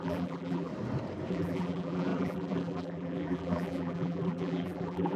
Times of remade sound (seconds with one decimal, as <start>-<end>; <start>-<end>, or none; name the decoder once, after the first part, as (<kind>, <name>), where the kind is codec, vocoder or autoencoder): 0.0-0.7 (vocoder, BigVGAN v2); 1.3-5.2

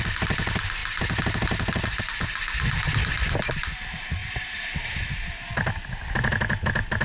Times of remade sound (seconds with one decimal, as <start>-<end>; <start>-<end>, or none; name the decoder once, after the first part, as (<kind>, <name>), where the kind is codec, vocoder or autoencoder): 0.0-0.8 (vocoder, BigVGAN v2); 2.0-4.2; 5.7-7.0

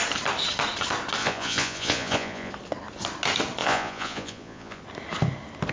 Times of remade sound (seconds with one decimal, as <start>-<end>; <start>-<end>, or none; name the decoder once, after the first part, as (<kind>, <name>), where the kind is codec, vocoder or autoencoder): 1.2-2.5 (vocoder, Vocos); 3.6-4.8

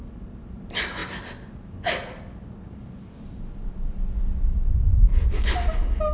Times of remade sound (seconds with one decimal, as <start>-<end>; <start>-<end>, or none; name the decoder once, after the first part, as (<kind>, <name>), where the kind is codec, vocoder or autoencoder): none

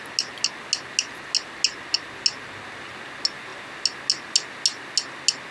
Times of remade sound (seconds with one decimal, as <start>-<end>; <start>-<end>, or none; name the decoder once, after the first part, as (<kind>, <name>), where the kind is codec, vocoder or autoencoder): none

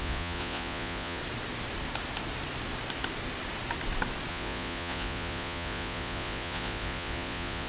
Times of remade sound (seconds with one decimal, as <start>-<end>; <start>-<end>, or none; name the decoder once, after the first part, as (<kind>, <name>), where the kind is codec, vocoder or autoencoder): 0.0-1.2 (vocoder, Vocos); 4.3-7.7